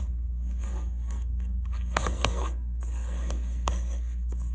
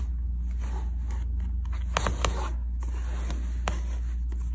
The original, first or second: second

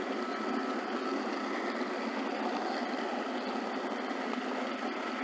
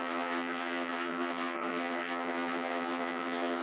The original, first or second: first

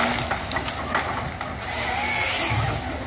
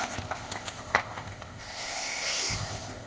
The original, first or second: first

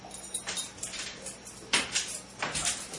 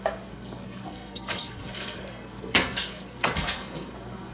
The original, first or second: first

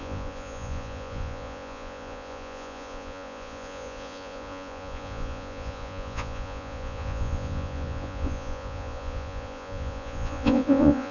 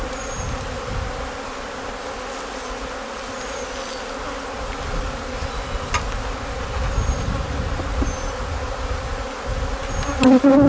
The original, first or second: second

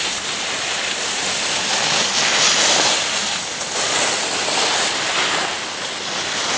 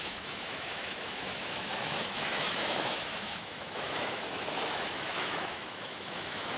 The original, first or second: first